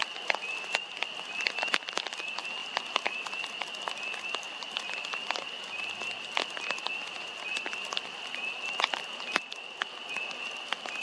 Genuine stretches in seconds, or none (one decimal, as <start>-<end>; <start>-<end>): 1.7-11.0